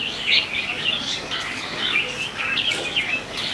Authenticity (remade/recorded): remade